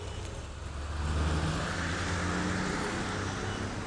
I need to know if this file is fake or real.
real